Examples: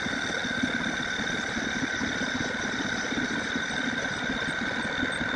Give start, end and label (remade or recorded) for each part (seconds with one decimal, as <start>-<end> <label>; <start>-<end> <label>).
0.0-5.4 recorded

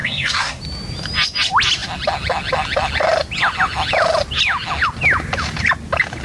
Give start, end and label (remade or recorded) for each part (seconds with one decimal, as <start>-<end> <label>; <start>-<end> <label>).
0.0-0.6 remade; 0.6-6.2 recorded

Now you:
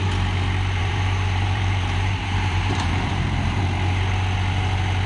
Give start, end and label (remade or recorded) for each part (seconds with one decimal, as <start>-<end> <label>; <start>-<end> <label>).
0.0-0.8 recorded; 0.8-3.6 remade; 3.6-5.1 recorded

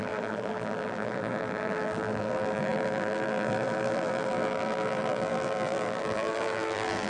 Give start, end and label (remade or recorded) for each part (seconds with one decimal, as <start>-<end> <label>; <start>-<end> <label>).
0.0-7.1 remade

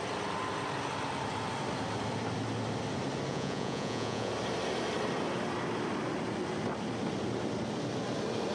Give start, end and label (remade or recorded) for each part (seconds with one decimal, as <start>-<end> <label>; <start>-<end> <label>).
0.0-3.3 recorded; 3.3-4.3 remade; 4.3-8.5 recorded

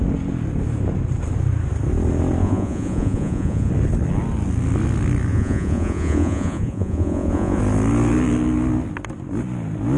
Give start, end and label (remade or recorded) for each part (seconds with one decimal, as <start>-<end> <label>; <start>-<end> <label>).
0.0-2.4 recorded; 2.4-3.7 remade; 3.7-5.3 recorded; 5.3-7.6 remade; 7.6-10.0 recorded

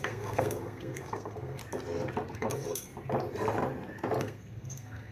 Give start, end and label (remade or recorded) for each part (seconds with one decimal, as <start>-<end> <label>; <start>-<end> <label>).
0.0-1.6 remade; 1.6-2.3 recorded; 2.3-2.9 remade; 2.9-4.2 recorded; 4.2-5.1 remade

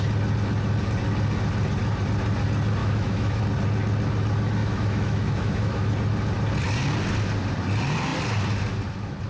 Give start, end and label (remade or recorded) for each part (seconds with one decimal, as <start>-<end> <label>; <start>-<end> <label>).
0.0-2.8 recorded; 2.8-3.4 remade; 3.4-4.6 recorded; 4.6-5.9 remade; 5.9-9.3 recorded